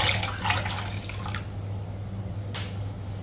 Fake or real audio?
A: real